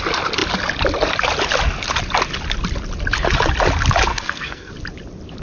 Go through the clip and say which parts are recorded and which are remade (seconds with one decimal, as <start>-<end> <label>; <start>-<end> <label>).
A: 0.0-4.1 recorded; 4.1-4.7 remade; 4.7-5.4 recorded